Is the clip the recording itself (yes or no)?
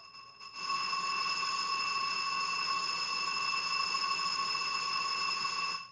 no